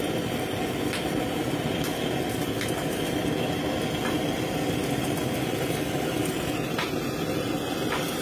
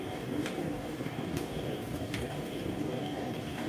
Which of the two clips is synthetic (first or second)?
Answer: second